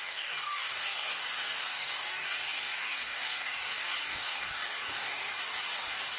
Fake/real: fake